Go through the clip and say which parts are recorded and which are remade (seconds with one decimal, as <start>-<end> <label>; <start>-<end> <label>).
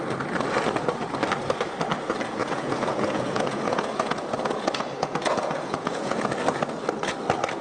0.0-2.4 recorded; 2.4-6.3 remade; 6.3-7.6 recorded